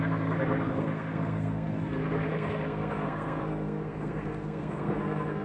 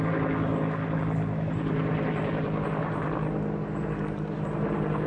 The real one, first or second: second